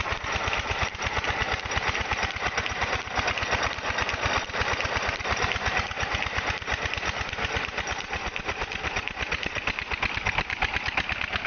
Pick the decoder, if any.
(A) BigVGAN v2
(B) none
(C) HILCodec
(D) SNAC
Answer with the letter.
B